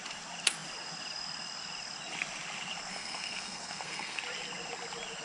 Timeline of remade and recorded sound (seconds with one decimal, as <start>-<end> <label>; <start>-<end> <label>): 0.0-2.9 recorded; 2.9-4.2 remade; 4.2-5.2 recorded